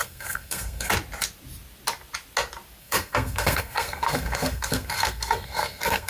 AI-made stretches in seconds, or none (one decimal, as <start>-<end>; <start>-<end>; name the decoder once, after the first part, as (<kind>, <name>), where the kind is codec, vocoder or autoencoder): 0.0-0.9 (codec, SNAC); 2.8-6.1